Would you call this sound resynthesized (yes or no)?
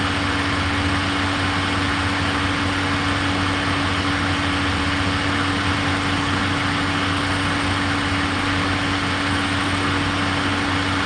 no